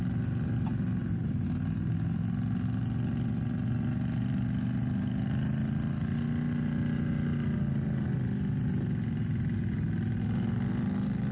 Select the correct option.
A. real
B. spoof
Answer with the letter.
A